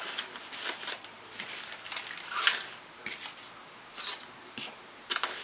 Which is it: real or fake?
real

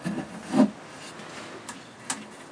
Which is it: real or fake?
real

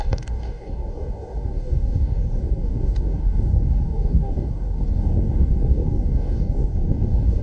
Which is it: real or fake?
fake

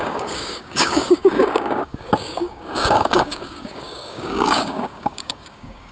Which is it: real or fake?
fake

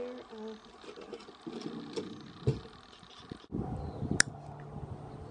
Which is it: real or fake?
real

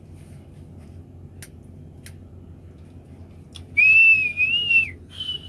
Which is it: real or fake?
real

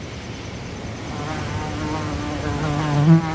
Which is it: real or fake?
real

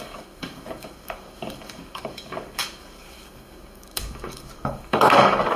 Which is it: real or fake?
fake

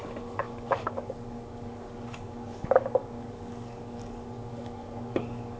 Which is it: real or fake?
fake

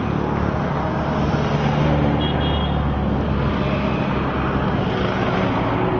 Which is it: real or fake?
real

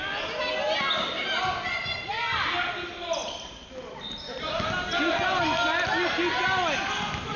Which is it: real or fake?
real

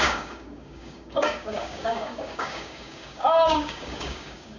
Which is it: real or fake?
fake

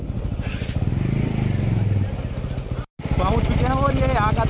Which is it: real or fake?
real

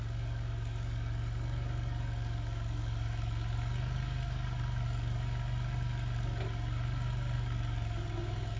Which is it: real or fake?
fake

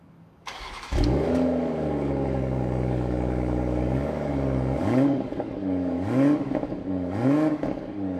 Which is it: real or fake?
fake